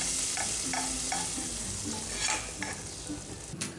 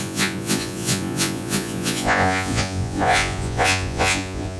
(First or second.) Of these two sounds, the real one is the first